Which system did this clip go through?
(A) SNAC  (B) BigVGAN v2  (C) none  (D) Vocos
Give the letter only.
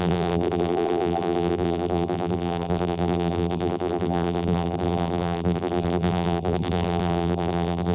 B